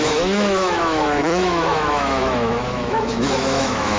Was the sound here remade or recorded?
remade